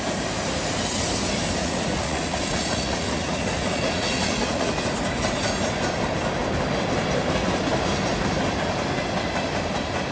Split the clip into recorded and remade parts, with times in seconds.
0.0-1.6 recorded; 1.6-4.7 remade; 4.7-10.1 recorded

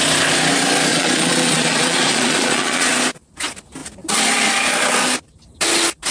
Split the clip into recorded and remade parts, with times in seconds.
0.0-0.9 recorded; 0.9-2.9 remade; 2.9-6.1 recorded

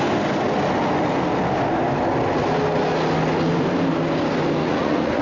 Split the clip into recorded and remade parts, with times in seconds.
0.0-4.6 recorded; 4.6-5.2 remade

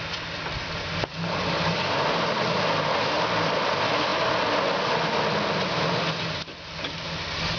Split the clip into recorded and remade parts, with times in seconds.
0.0-7.6 recorded

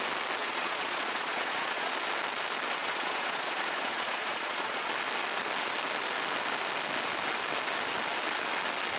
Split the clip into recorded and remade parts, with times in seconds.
0.0-0.4 recorded; 0.4-1.9 remade; 1.9-2.8 recorded; 2.8-4.9 remade; 4.9-9.0 recorded

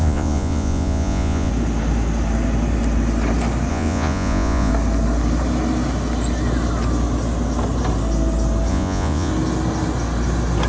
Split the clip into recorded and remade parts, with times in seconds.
0.0-1.5 remade; 1.5-3.7 recorded; 3.7-4.7 remade; 4.7-8.7 recorded; 8.7-9.3 remade; 9.3-10.7 recorded

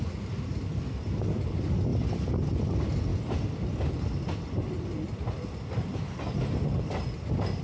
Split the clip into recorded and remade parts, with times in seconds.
0.0-7.6 recorded